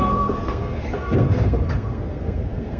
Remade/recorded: remade